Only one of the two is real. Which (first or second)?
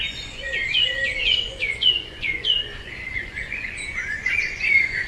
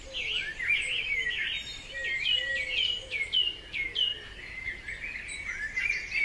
second